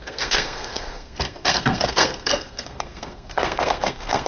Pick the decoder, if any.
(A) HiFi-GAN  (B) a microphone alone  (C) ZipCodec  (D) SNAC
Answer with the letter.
D